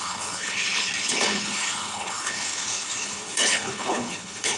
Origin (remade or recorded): remade